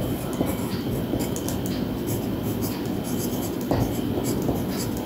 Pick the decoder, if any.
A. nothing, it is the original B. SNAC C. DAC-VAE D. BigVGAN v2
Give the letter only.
A